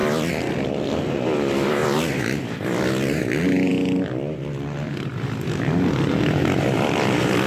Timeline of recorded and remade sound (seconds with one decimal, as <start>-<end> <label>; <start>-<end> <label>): 0.0-7.5 recorded